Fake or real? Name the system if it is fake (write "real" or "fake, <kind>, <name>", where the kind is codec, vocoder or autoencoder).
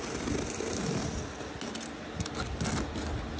real